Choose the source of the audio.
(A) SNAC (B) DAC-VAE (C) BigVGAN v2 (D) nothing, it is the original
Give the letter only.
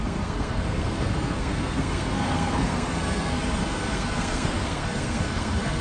A